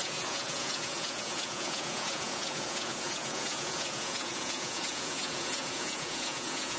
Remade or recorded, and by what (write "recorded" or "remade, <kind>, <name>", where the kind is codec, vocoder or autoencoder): remade, vocoder, Vocos